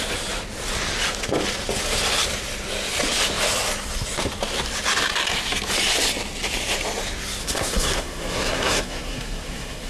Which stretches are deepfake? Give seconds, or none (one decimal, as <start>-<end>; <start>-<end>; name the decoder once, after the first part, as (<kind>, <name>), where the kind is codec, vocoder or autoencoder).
7.4-9.9 (codec, SNAC)